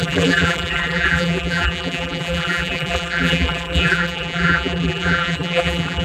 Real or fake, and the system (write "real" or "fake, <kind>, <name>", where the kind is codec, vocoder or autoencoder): fake, vocoder, BigVGAN v2